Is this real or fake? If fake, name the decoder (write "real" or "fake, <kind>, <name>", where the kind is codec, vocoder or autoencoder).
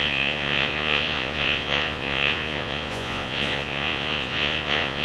fake, vocoder, Vocos